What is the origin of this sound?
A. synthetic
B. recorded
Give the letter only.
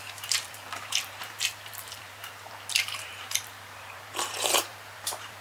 A